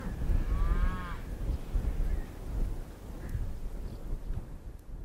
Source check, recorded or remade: recorded